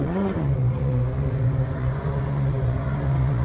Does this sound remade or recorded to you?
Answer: remade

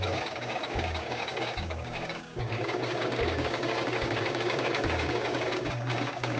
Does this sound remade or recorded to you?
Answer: remade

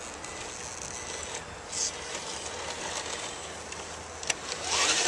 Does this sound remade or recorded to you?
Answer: recorded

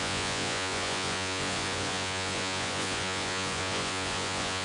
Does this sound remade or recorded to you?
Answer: remade